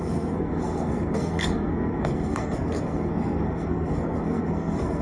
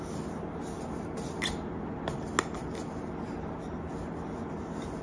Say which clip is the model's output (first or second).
first